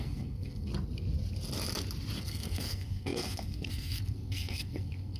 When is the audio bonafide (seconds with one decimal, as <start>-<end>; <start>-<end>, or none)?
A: 0.7-2.2